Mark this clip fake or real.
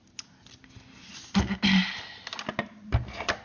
real